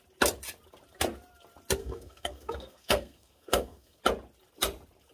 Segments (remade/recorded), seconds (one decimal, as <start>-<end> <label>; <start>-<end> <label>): 0.0-1.8 recorded; 1.8-4.0 remade; 4.0-5.1 recorded